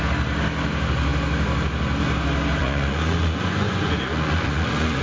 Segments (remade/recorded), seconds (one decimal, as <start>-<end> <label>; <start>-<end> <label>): 0.0-2.6 recorded; 2.6-5.0 remade